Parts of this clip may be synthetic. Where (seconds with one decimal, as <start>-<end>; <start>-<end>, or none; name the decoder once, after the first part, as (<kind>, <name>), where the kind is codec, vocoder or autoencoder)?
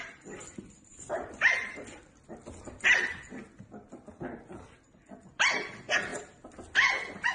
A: none